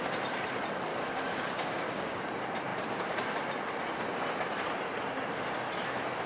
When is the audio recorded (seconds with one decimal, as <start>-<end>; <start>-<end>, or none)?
0.0-0.9; 2.2-6.3